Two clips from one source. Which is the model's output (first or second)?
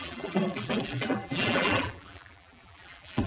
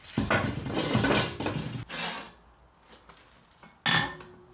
first